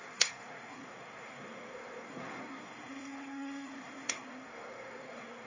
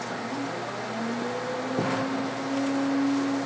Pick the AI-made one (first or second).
first